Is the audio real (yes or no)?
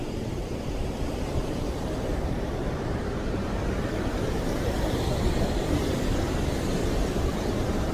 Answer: no